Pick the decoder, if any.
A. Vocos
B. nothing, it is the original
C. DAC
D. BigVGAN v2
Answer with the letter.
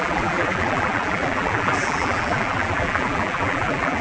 D